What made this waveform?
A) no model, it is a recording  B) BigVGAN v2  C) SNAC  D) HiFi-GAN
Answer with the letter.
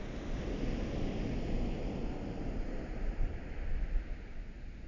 A